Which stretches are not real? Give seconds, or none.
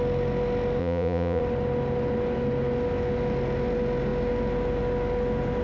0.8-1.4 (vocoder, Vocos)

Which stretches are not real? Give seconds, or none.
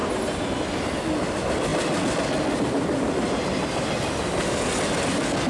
none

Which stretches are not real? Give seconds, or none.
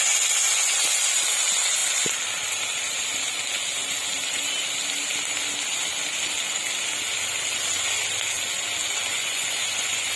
9.1-10.2 (vocoder, Vocos)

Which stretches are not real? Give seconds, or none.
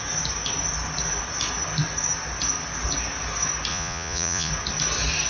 3.7-4.5 (vocoder, Vocos)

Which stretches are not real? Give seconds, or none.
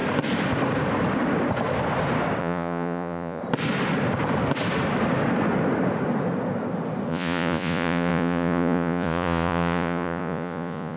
2.4-3.4 (vocoder, Vocos); 7.1-11.0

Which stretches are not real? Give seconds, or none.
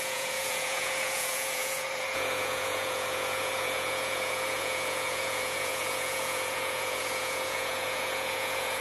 0.0-8.8 (vocoder, Vocos)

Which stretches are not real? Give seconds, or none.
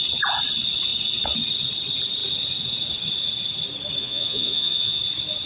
4.0-5.0 (vocoder, Vocos)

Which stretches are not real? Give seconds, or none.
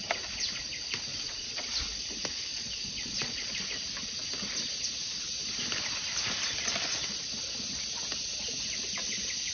1.1-1.7 (vocoder, Vocos); 2.5-3.6